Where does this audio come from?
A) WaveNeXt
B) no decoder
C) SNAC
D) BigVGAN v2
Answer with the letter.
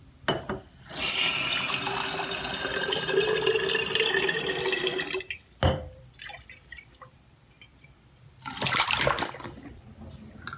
D